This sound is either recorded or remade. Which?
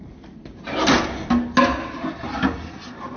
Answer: recorded